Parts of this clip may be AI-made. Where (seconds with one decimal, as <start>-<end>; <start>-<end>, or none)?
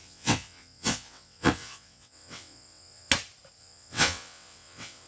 0.0-3.1; 3.6-5.1